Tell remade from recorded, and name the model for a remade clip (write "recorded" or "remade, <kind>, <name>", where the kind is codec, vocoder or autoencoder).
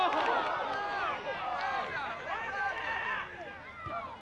recorded